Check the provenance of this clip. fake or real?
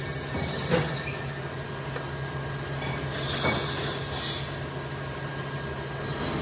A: real